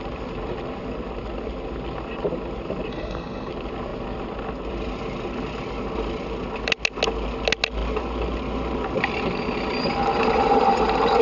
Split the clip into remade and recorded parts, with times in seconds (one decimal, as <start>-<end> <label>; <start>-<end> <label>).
0.0-2.9 recorded; 2.9-3.5 remade; 3.5-11.2 recorded